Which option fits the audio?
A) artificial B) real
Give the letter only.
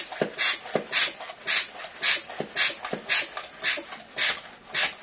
B